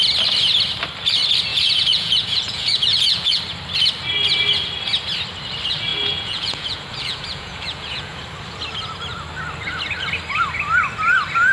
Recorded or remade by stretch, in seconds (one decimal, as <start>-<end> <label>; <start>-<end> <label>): 0.0-1.5 recorded; 1.5-3.4 remade; 3.4-5.9 recorded; 5.9-8.2 remade; 8.2-11.5 recorded